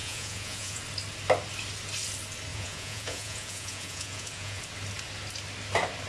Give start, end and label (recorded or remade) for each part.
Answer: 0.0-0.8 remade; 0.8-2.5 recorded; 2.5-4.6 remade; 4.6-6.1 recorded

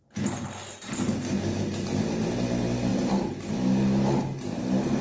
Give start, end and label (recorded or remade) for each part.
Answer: 0.0-5.0 recorded

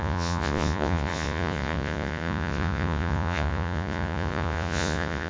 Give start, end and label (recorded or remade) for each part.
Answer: 0.0-5.3 remade

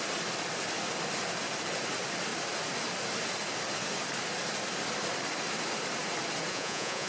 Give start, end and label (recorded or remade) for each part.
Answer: 0.0-6.5 recorded; 6.5-7.1 remade

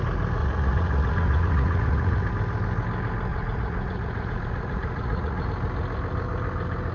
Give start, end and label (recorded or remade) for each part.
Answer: 0.0-0.4 recorded; 0.4-2.3 remade; 2.3-3.3 recorded; 3.3-5.5 remade; 5.5-6.9 recorded